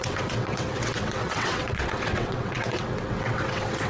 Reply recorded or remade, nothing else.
remade